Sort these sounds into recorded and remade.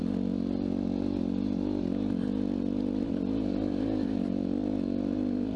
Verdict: recorded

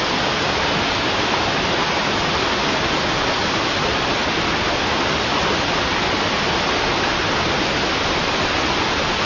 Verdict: recorded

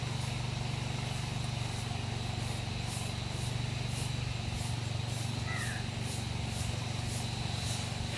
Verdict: recorded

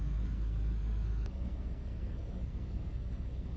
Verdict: remade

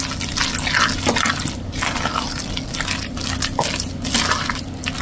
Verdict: recorded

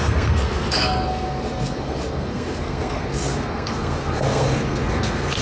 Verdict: remade